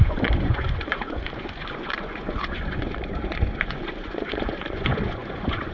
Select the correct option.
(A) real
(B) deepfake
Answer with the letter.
B